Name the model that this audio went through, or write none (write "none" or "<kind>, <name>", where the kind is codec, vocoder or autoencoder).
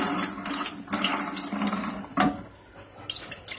none